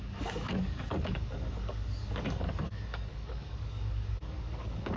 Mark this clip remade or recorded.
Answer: remade